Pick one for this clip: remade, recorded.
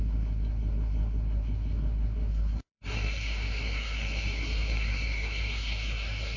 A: remade